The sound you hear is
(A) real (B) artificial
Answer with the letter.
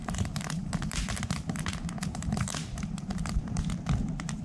B